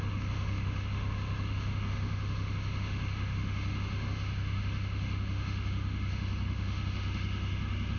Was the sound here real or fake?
fake